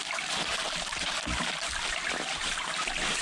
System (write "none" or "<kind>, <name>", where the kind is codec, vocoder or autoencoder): none